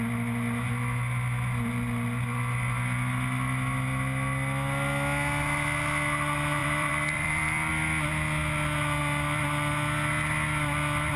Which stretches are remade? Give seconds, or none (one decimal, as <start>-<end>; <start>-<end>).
6.6-7.7